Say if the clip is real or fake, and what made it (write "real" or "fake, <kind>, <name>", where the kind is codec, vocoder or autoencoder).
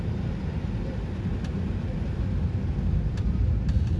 real